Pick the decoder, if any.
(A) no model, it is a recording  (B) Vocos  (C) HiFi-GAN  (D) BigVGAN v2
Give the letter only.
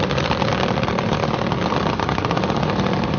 A